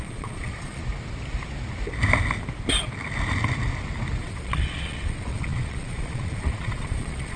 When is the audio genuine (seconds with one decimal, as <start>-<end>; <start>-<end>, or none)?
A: 0.8-4.2